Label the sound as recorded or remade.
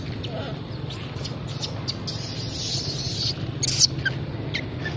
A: recorded